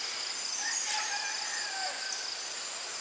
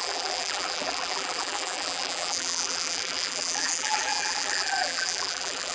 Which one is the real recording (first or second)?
first